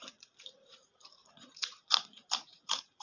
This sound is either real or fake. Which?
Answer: fake